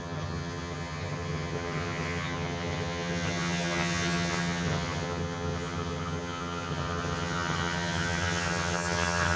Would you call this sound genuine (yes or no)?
no